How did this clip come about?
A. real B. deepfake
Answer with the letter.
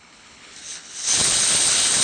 B